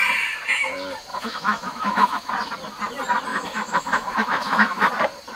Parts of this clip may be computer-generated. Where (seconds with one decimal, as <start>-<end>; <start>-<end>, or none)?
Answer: 1.1-2.3; 3.3-4.9